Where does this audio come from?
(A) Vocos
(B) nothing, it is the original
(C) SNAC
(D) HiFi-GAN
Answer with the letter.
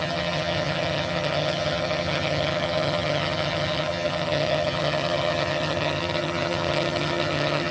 D